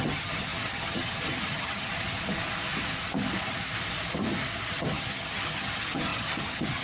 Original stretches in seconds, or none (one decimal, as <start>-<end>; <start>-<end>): 1.9-4.7